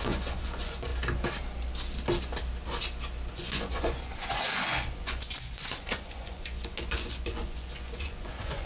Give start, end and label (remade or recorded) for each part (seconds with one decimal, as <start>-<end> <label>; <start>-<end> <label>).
0.0-0.9 remade; 0.9-3.3 recorded; 3.3-8.7 remade